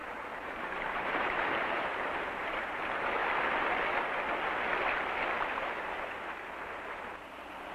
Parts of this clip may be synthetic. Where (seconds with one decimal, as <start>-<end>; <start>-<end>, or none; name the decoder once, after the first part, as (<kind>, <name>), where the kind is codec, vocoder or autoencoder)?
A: 0.0-3.2 (vocoder, BigVGAN v2); 6.7-7.7